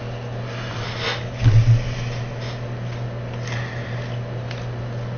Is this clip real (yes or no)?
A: yes